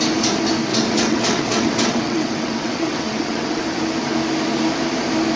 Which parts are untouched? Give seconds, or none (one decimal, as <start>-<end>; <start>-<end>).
0.0-0.7; 3.6-5.4